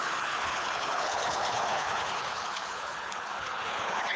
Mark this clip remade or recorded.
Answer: remade